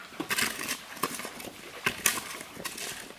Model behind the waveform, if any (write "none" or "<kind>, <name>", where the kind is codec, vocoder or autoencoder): none